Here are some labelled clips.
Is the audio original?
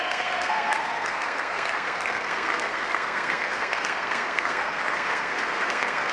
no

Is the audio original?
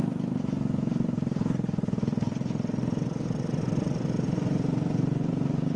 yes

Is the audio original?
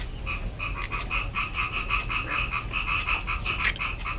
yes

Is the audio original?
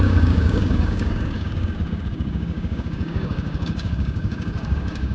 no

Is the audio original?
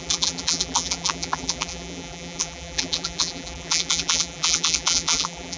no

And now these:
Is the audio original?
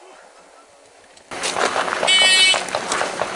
yes